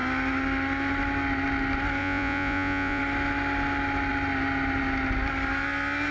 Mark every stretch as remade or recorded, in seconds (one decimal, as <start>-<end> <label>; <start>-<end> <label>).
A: 0.0-2.0 recorded; 2.0-3.0 remade; 3.0-6.1 recorded